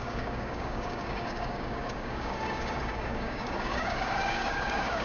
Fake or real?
fake